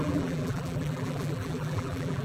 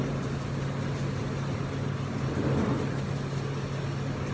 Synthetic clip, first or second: first